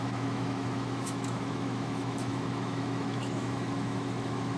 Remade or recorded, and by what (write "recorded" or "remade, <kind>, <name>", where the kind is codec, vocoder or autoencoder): remade, autoencoder, DAC-VAE